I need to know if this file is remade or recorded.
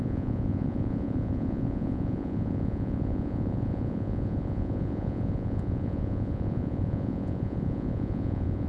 remade